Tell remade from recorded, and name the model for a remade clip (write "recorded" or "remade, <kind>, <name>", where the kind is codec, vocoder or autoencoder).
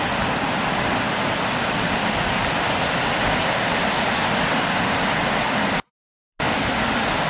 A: recorded